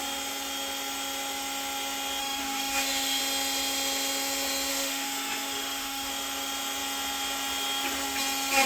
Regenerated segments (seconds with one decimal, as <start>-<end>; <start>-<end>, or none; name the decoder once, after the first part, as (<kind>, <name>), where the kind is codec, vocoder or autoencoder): 2.2-3.2 (autoencoder, DAC-VAE); 4.7-6.1